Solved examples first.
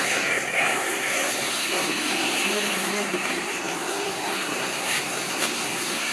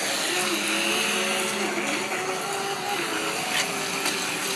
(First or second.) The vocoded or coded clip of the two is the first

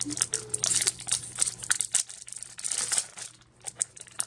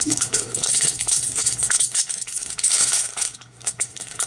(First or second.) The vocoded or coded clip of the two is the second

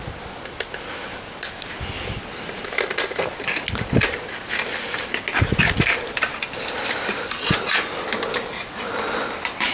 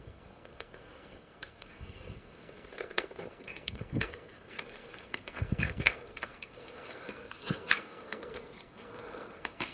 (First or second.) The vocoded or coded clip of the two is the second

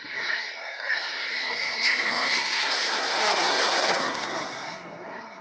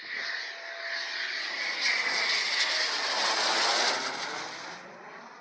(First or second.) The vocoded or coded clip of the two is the first